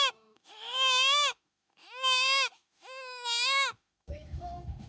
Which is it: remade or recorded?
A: remade